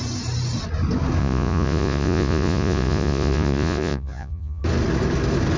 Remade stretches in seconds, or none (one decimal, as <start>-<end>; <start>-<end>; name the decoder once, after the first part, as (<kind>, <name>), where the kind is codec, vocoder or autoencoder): 1.2-4.6 (vocoder, Vocos)